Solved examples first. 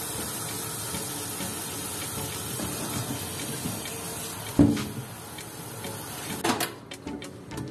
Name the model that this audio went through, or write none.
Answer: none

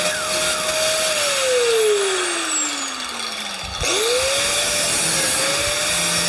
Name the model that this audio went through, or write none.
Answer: none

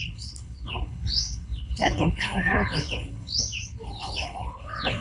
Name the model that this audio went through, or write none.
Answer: codec, HILCodec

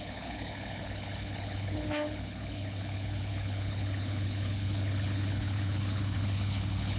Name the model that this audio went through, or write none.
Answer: codec, HILCodec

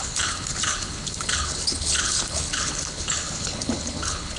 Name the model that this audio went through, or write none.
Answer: codec, HILCodec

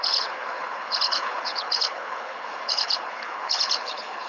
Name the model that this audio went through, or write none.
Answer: codec, HILCodec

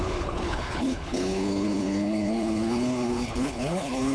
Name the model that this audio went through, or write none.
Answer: codec, HILCodec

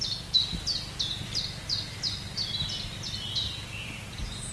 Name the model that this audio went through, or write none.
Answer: none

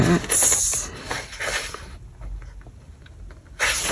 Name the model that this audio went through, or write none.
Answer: none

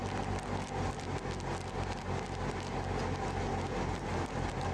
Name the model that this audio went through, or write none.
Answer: none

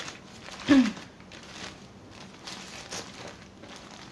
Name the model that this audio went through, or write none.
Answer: none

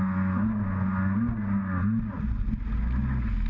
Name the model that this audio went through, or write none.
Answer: none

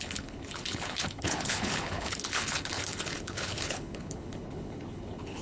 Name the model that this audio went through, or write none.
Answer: codec, HILCodec